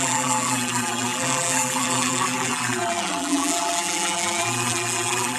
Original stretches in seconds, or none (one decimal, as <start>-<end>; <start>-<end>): none